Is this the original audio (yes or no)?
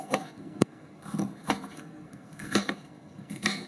no